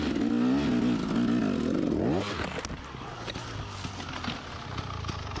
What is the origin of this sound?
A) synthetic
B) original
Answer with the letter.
B